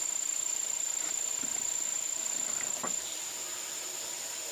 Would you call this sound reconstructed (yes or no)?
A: yes